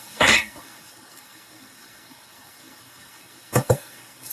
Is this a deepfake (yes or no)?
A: yes